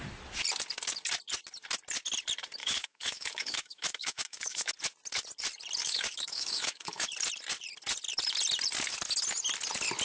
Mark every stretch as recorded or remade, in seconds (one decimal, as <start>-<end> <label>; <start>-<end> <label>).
0.0-2.6 recorded; 2.6-4.7 remade; 4.7-5.8 recorded; 5.8-7.1 remade; 7.1-10.0 recorded